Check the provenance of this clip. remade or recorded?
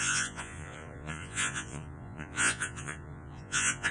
remade